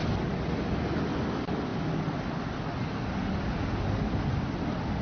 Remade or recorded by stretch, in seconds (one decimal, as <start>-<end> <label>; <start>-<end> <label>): 0.0-5.0 recorded